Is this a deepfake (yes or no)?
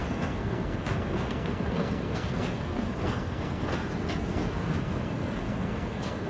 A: yes